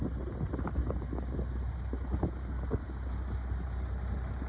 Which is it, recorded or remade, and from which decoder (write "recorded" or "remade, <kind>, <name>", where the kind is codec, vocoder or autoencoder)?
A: recorded